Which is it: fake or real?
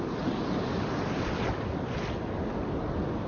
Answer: real